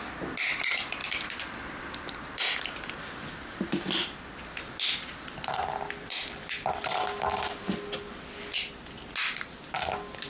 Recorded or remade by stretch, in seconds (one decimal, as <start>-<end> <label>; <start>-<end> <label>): 0.0-1.0 recorded; 1.0-2.6 remade; 2.6-10.3 recorded